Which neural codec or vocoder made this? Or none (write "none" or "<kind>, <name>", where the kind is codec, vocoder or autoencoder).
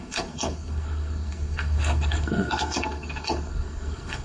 codec, SNAC